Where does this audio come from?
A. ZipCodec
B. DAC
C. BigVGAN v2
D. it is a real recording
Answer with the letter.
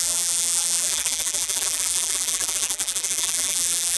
C